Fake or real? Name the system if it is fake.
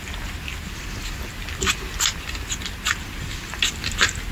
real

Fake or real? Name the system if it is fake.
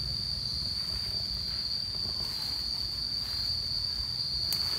real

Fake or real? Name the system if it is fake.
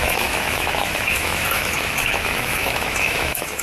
fake, autoencoder, DAC-VAE